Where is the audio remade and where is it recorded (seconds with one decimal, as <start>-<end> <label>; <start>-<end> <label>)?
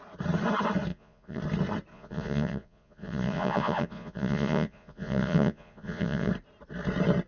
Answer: 0.0-0.9 recorded; 0.9-1.4 remade; 1.4-1.9 recorded; 1.9-6.3 remade; 6.3-7.3 recorded